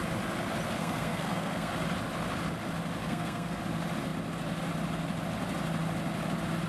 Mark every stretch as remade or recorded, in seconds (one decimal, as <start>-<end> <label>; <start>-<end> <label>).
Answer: 0.0-0.8 recorded; 0.8-1.7 remade; 1.7-3.0 recorded; 3.0-3.6 remade; 3.6-6.7 recorded